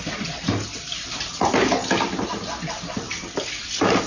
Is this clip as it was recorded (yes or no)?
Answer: yes